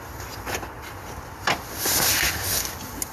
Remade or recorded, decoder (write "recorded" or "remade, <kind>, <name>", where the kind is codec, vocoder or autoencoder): recorded